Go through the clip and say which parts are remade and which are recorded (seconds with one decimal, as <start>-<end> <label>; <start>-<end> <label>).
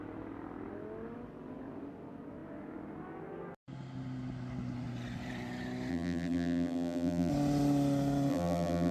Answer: 0.0-5.9 recorded; 5.9-7.3 remade; 7.3-8.3 recorded; 8.3-8.9 remade